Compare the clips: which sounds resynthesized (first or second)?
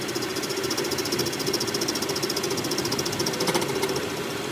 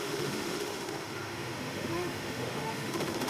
second